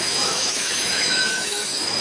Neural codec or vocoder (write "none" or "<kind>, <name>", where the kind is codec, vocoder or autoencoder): autoencoder, DAC-VAE